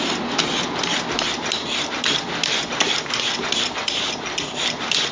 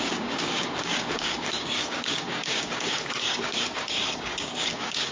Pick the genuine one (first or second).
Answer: first